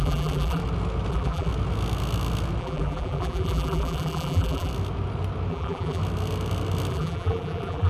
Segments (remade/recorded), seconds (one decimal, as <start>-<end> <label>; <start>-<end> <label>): 0.0-0.6 remade; 0.6-1.1 recorded; 1.1-1.5 remade; 1.5-2.6 recorded; 2.6-4.7 remade; 4.7-5.5 recorded; 5.5-6.0 remade; 6.0-6.9 recorded; 6.9-7.9 remade